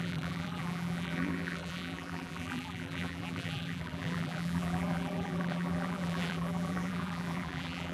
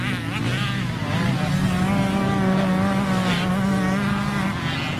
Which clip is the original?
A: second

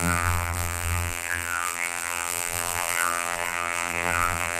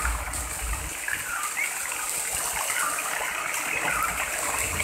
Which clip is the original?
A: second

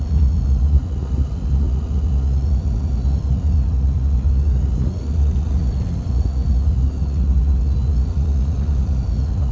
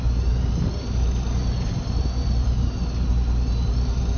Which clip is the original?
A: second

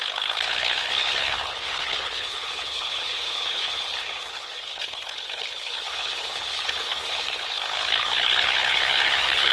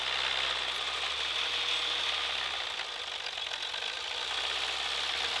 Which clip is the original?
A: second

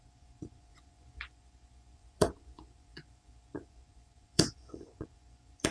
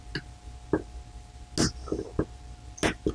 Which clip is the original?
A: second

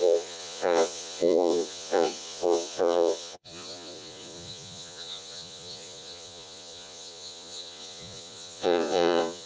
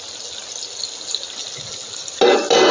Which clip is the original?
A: second